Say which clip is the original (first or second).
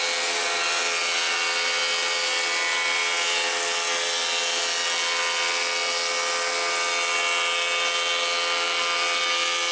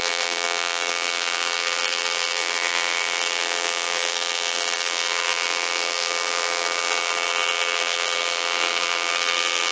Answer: first